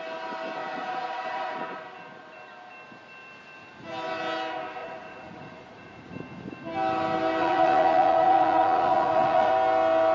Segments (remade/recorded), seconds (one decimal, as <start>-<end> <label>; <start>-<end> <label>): 0.0-0.6 recorded; 0.6-1.8 remade; 1.8-4.8 recorded; 4.8-6.1 remade; 6.1-7.4 recorded; 7.4-9.5 remade; 9.5-10.1 recorded

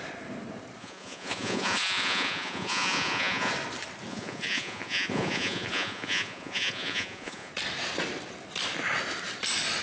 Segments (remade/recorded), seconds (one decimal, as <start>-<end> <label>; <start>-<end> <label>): 0.0-0.8 recorded; 0.8-3.5 remade; 3.5-4.1 recorded; 4.1-7.5 remade; 7.5-9.8 recorded

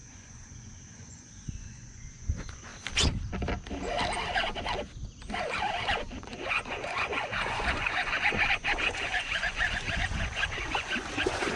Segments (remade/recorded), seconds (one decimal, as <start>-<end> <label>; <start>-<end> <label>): 0.0-2.7 remade; 2.7-6.1 recorded; 6.1-11.6 remade

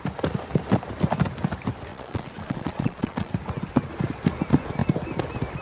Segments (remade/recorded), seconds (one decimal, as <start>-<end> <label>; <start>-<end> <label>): 0.0-1.9 recorded; 1.9-3.3 remade; 3.3-5.6 recorded

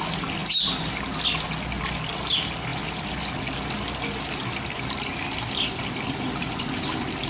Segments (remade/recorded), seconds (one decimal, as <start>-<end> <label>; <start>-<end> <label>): 0.0-7.3 recorded